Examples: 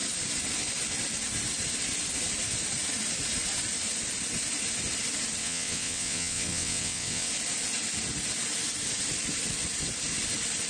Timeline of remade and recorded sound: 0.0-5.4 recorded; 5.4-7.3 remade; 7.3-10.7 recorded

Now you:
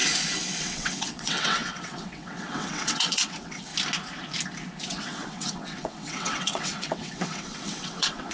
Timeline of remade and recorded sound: 0.0-0.6 recorded; 0.6-3.7 remade; 3.7-4.9 recorded; 4.9-8.3 remade